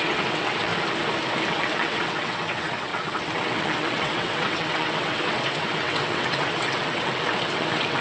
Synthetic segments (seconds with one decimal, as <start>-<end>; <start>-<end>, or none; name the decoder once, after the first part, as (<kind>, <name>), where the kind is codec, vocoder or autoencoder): 0.0-0.7 (vocoder, WaveNeXt); 1.5-8.0